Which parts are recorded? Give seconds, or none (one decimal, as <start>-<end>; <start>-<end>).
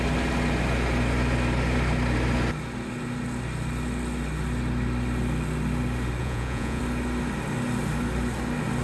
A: 0.0-6.2; 6.8-8.8